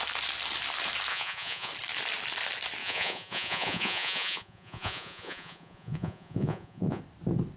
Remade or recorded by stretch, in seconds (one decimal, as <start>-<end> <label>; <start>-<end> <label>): 0.0-1.1 recorded; 1.1-1.7 remade; 1.7-2.8 recorded; 2.8-7.0 remade; 7.0-7.6 recorded